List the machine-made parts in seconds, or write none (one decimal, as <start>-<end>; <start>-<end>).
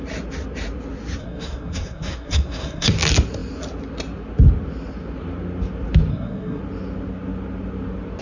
1.2-2.9; 6.1-6.6